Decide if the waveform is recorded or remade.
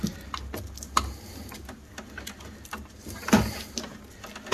recorded